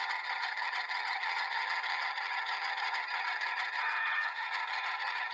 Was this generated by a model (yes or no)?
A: yes